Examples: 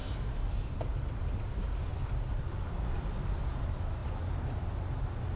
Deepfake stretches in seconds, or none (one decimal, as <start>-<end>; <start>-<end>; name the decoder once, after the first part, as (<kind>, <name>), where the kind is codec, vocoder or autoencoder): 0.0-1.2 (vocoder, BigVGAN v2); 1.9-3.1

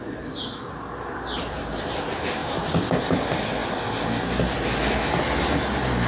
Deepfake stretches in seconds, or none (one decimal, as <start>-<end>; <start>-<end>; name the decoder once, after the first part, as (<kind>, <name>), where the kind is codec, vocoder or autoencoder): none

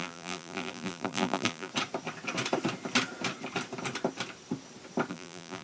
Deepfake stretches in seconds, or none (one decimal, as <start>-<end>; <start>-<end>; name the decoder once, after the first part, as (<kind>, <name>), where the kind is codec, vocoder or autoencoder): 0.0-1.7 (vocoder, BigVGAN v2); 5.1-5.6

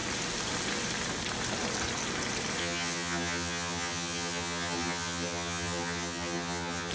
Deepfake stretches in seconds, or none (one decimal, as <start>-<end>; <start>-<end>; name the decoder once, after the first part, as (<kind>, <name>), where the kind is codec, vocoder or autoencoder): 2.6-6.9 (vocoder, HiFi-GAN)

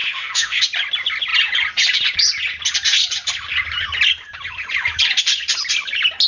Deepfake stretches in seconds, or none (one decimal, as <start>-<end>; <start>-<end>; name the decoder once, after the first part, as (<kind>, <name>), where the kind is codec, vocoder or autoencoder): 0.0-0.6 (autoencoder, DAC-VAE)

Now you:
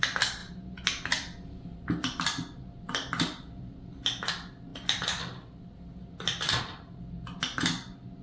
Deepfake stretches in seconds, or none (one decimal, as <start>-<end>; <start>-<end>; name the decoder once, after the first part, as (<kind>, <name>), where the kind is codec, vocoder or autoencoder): none

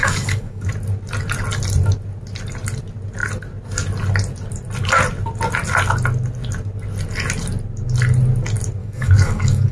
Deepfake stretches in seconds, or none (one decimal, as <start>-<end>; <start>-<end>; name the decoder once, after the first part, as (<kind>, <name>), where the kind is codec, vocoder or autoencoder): 0.0-0.7 (codec, DAC); 8.8-9.7

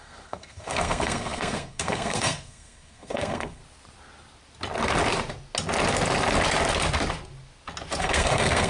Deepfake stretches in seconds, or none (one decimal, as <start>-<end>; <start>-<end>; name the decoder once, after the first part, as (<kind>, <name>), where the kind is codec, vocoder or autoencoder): 0.0-3.6 (codec, SNAC); 8.0-8.7